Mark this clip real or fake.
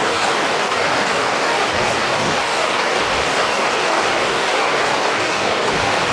fake